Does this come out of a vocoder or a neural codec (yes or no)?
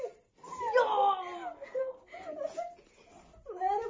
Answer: no